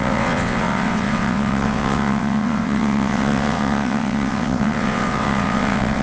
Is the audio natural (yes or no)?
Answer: no